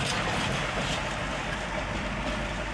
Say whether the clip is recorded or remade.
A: recorded